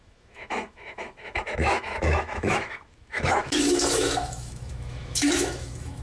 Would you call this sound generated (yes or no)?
yes